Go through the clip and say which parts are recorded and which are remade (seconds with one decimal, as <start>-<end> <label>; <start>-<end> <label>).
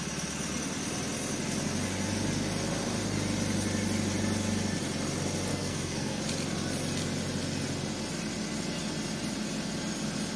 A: 0.0-5.5 recorded; 5.5-6.2 remade; 6.2-10.4 recorded